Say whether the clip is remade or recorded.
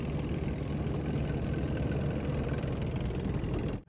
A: recorded